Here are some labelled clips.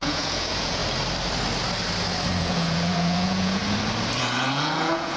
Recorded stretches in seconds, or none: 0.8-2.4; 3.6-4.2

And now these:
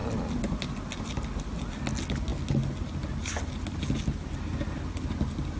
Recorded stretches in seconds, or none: 0.0-5.6

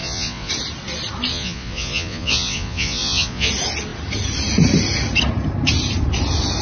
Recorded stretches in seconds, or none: 0.5-1.3; 3.5-6.6